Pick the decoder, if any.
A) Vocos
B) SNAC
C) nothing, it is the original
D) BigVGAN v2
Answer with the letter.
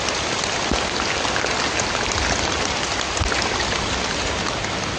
C